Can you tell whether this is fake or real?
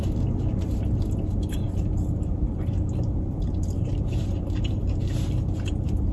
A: fake